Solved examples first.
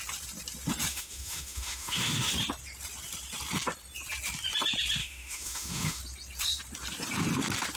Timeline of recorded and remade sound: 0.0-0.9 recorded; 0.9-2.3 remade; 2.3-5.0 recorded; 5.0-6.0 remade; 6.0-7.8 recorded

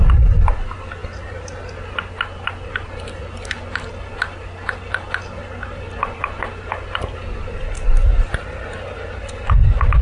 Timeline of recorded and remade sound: 0.0-10.0 recorded

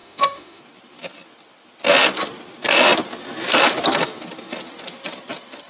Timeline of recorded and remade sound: 0.0-0.6 remade; 0.6-5.7 recorded

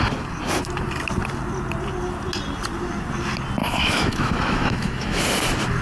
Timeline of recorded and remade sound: 0.0-3.6 recorded; 3.6-5.2 remade; 5.2-5.8 recorded

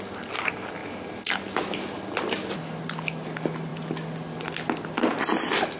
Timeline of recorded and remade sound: 0.0-5.8 recorded

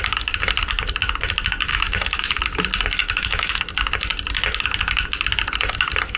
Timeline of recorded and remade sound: 0.0-1.7 recorded; 1.7-2.4 remade; 2.4-3.0 recorded; 3.0-3.6 remade; 3.6-6.2 recorded

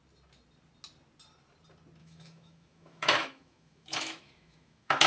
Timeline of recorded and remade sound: 0.0-2.0 recorded; 2.0-5.1 remade